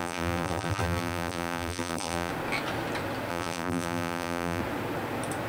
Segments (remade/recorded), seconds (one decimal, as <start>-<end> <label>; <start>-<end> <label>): 0.0-2.3 remade; 2.3-3.3 recorded; 3.3-4.6 remade; 4.6-5.5 recorded